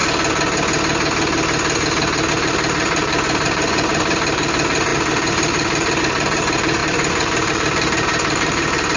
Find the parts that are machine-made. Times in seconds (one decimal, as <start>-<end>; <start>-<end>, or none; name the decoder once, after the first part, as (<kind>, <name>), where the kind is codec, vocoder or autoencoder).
2.3-9.0 (vocoder, BigVGAN v2)